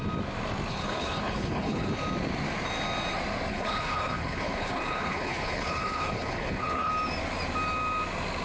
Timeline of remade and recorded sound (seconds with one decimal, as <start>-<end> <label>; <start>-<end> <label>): 0.0-0.7 recorded; 0.7-1.9 remade; 1.9-3.5 recorded; 3.5-6.9 remade; 6.9-8.4 recorded

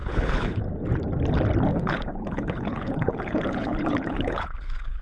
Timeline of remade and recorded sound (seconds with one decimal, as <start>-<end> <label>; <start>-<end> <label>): 0.0-0.6 remade; 0.6-1.7 recorded; 1.7-5.0 remade

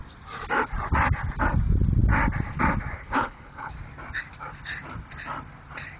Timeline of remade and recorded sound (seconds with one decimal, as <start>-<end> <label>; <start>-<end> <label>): 0.0-3.0 recorded; 3.0-3.7 remade; 3.7-6.0 recorded

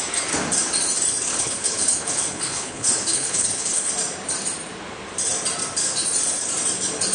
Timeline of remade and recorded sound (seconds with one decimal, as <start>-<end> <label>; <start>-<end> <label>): 0.0-1.3 recorded; 1.3-3.9 remade; 3.9-7.1 recorded

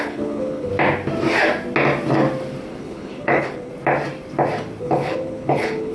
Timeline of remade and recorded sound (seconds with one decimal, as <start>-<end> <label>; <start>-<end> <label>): 0.0-0.7 remade; 0.7-2.8 recorded; 2.8-3.7 remade; 3.7-4.8 recorded; 4.8-5.9 remade